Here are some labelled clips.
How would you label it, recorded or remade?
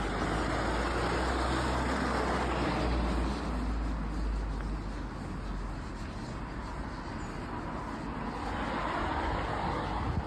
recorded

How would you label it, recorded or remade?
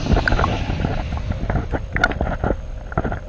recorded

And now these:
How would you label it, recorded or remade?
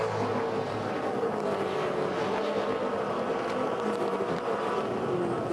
recorded